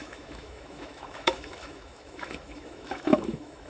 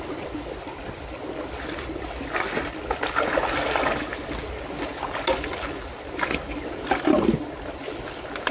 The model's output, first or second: first